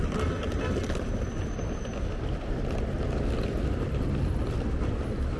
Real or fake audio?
real